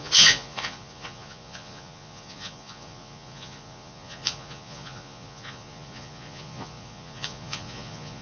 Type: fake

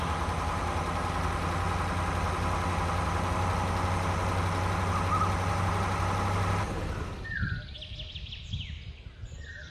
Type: real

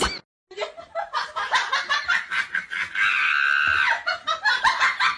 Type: real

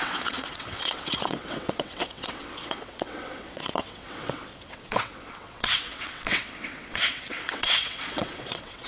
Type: fake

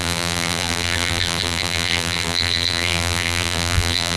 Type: fake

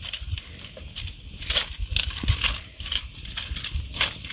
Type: real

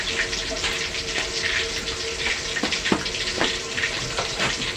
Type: real